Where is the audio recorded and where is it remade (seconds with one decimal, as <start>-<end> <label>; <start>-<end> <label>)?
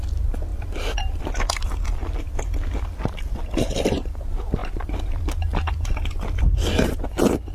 0.0-0.5 recorded; 0.5-1.2 remade; 1.2-4.6 recorded; 4.6-6.4 remade; 6.4-7.5 recorded